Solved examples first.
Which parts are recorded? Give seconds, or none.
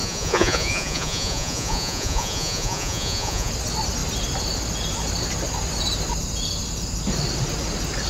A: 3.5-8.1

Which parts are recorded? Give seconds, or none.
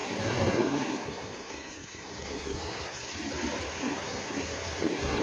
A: 3.1-3.7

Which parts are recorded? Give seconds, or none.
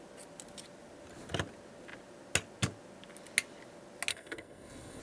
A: 0.0-4.1